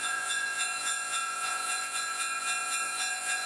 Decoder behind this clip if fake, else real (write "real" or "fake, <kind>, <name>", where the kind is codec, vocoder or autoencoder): fake, vocoder, Vocos